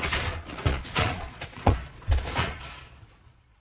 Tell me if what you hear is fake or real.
fake